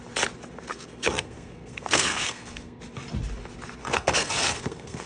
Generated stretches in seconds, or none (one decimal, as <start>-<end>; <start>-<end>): 0.7-2.8; 3.8-5.1